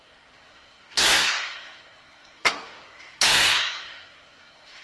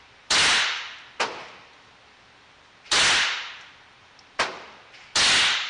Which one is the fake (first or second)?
first